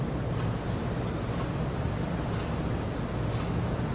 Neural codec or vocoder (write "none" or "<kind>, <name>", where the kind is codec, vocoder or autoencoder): none